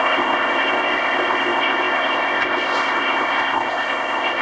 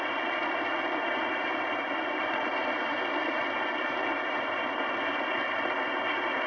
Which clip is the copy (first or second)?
first